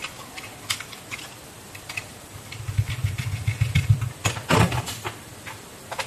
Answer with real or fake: fake